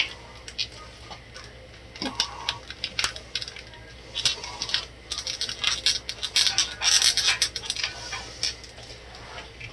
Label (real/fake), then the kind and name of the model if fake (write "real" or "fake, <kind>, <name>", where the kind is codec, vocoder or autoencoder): real